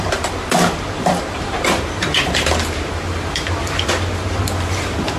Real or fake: fake